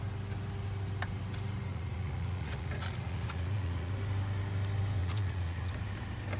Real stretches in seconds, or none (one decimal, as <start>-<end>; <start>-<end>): 0.0-1.7; 3.9-5.0; 5.7-6.4